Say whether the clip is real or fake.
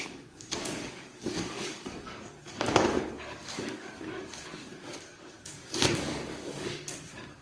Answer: fake